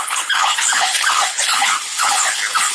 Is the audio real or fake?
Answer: fake